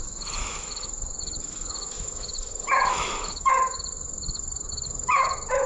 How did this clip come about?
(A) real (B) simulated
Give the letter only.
B